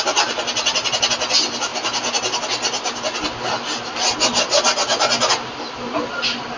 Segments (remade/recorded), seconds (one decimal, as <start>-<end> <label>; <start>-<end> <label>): 0.0-6.6 recorded